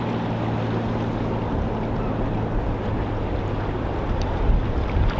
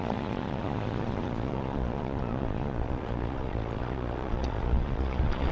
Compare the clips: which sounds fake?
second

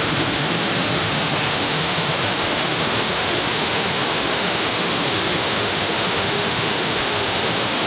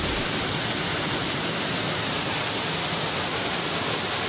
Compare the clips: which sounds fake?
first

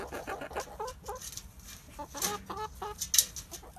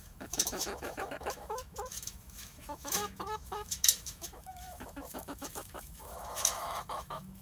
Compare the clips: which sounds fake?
second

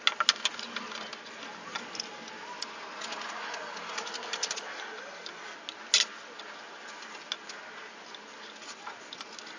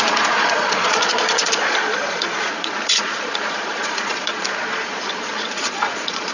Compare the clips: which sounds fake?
second